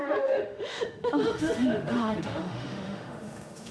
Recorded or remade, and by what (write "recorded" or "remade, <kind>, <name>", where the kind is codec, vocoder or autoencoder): remade, autoencoder, DAC-VAE